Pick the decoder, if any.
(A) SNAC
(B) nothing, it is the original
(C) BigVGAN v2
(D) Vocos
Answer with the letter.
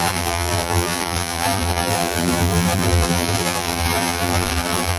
C